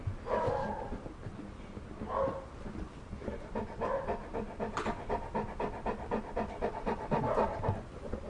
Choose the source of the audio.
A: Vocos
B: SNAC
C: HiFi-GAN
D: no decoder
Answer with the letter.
D